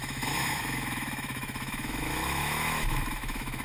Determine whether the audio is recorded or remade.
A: remade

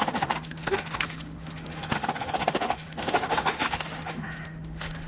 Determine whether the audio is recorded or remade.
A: remade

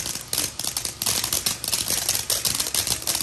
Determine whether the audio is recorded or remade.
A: recorded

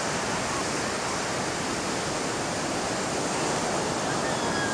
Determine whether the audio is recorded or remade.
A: recorded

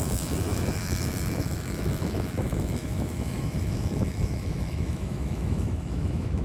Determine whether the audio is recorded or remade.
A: remade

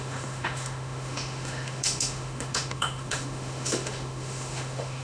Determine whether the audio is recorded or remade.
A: remade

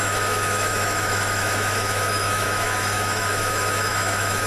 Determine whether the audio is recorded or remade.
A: remade